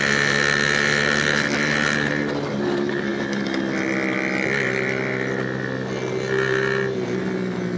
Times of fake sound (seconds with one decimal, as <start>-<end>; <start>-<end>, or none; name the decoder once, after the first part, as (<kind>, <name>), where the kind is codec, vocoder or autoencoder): none